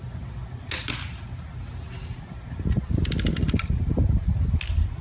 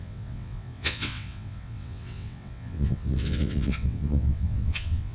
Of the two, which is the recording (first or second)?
first